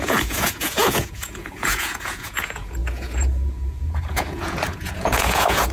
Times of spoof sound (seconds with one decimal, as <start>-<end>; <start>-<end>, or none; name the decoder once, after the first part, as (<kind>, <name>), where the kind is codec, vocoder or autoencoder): 0.0-5.7 (vocoder, Vocos)